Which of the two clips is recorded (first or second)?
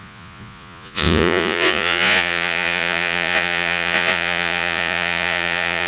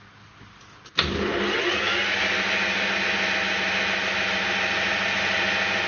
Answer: second